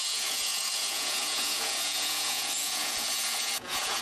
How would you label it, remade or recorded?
remade